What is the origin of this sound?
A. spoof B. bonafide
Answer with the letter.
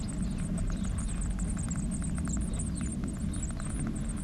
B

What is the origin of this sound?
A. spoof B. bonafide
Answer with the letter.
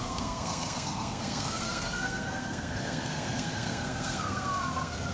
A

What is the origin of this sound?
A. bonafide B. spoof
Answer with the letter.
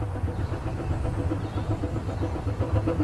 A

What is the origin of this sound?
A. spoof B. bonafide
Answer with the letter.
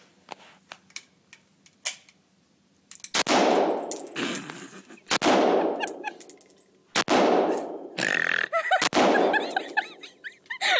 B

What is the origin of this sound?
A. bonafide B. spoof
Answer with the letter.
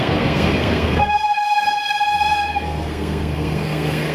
B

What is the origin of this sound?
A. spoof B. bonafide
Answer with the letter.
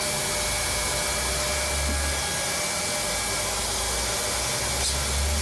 B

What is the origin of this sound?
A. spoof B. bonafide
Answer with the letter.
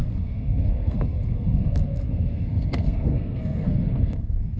A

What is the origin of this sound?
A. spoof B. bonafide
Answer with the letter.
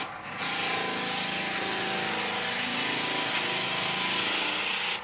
B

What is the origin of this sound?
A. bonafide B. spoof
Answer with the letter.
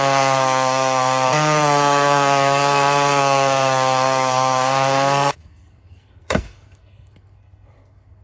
B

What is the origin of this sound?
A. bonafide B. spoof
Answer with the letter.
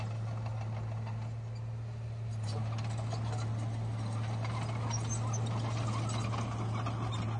A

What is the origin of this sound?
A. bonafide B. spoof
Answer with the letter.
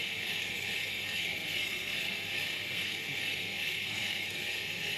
B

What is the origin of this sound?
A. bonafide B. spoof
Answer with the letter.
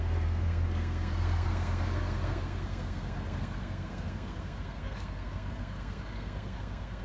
B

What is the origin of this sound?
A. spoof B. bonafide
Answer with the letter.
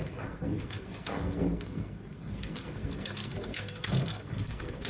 A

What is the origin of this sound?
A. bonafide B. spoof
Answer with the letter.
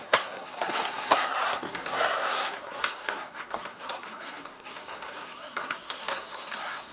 B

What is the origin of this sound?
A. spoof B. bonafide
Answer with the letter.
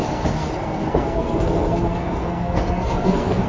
A